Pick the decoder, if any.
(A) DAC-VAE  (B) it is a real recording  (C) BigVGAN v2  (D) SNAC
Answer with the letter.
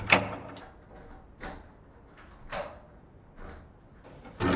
B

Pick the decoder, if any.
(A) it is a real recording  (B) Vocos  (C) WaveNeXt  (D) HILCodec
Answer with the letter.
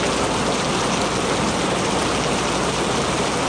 A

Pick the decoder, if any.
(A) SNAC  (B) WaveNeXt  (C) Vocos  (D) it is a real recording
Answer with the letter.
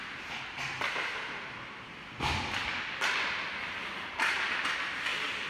D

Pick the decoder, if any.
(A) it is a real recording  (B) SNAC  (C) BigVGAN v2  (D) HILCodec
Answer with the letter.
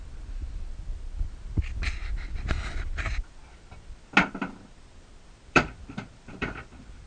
A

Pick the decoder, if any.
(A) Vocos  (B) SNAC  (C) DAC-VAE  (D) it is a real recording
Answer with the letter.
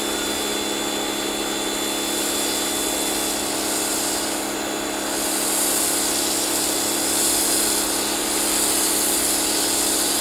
D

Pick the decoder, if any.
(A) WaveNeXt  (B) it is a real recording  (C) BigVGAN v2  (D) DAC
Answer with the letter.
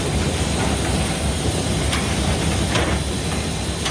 B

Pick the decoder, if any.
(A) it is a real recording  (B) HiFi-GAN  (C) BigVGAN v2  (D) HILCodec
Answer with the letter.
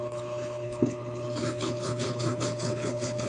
D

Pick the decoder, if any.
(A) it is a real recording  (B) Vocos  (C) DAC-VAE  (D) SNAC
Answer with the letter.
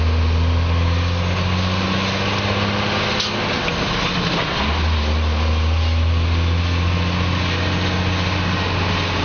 A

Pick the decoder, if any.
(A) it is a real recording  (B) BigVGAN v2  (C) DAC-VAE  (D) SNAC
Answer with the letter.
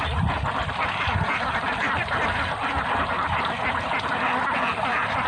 A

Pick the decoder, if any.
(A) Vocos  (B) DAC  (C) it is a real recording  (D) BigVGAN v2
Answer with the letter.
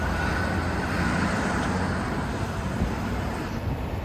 C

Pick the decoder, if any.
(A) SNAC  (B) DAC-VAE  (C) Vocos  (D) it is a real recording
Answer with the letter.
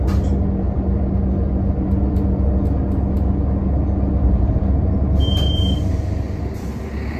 D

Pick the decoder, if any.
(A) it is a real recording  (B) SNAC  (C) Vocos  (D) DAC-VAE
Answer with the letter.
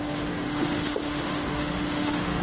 D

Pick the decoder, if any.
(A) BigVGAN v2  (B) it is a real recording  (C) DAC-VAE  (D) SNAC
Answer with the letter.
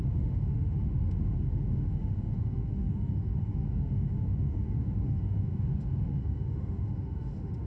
C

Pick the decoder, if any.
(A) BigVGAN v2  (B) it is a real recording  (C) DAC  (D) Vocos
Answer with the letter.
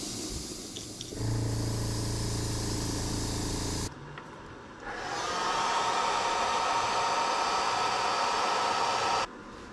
B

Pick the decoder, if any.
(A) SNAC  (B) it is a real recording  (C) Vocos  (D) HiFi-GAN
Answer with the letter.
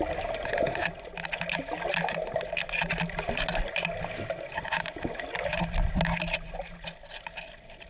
B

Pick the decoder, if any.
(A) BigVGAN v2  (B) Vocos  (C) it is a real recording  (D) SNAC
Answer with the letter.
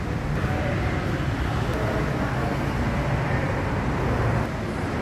C